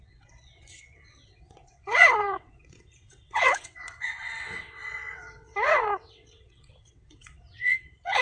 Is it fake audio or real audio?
fake